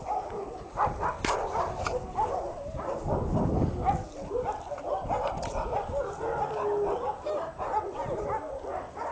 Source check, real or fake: real